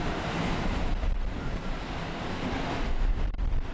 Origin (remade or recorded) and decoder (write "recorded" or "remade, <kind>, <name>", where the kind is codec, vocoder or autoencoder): recorded